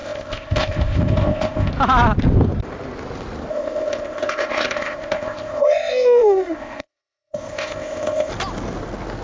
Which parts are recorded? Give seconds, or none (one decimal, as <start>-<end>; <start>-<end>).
1.7-3.5; 8.3-9.2